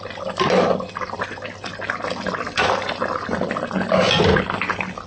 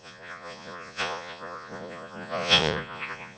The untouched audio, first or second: first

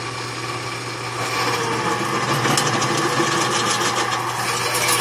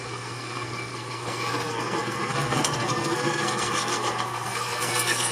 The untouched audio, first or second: first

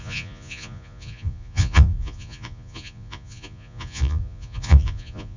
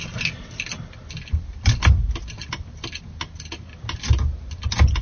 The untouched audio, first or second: second